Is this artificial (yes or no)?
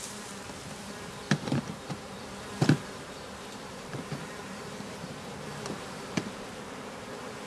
yes